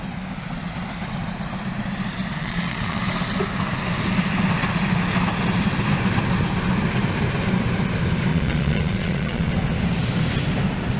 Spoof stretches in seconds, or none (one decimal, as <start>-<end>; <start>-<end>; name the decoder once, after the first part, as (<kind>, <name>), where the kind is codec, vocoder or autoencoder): 2.4-3.0 (vocoder, Vocos); 8.3-9.5